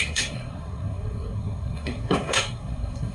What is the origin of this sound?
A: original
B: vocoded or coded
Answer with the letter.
B